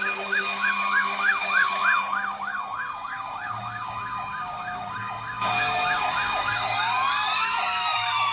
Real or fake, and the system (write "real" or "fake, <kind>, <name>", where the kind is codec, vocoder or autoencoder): fake, codec, DAC